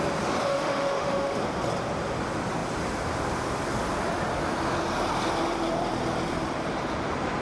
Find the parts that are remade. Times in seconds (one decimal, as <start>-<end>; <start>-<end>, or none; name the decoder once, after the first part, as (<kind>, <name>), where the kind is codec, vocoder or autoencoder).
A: 0.5-1.4 (autoencoder, DAC-VAE)